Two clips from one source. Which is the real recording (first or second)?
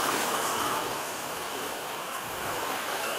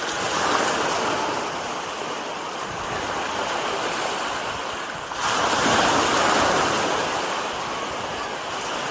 second